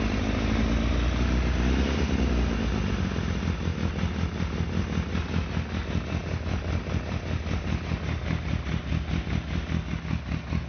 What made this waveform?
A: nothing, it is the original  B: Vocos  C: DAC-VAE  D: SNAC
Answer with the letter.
A